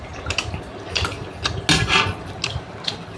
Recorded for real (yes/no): yes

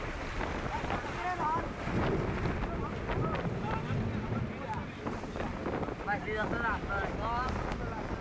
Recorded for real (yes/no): yes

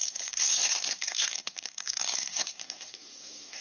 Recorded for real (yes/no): no